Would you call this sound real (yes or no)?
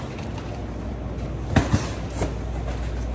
yes